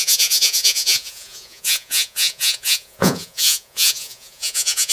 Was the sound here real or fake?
fake